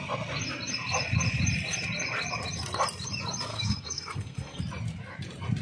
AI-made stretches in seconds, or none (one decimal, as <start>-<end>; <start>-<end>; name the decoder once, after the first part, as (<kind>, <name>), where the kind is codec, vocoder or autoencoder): 3.5-4.6 (codec, SNAC)